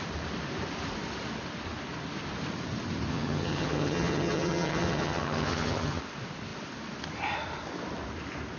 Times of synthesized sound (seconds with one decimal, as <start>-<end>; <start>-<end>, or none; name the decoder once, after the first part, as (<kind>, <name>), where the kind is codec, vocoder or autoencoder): 3.1-6.0 (vocoder, HiFi-GAN)